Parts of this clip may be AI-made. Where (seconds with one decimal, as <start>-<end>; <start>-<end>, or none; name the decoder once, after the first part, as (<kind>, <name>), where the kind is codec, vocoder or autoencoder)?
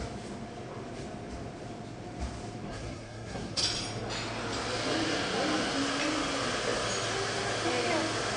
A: 2.7-3.6 (codec, SNAC)